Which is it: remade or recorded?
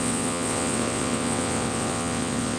remade